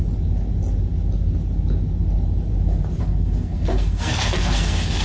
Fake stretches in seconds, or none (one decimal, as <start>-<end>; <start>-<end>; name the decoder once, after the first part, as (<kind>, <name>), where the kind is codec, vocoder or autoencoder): 3.0-5.0 (codec, SNAC)